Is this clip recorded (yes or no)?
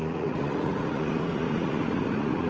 no